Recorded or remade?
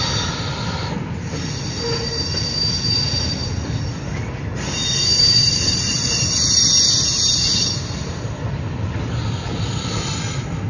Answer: recorded